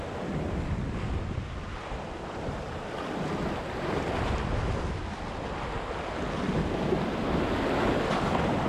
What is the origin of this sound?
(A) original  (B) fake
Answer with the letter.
A